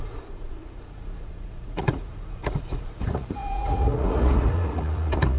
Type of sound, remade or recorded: remade